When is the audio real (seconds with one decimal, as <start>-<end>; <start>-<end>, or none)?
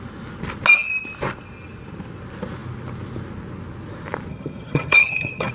0.0-4.3